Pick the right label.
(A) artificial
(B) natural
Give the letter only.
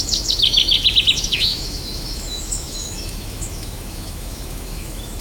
A